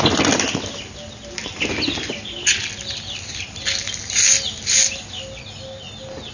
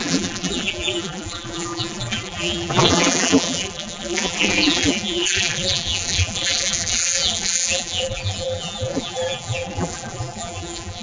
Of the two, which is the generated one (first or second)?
second